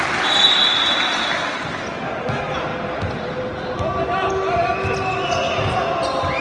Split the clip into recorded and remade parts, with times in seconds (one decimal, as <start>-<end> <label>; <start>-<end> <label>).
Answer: 0.0-6.4 recorded